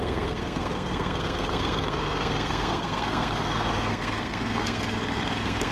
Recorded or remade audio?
remade